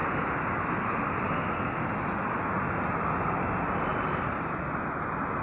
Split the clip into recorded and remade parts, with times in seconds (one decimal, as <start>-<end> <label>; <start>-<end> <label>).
0.0-3.9 recorded; 3.9-4.8 remade; 4.8-5.4 recorded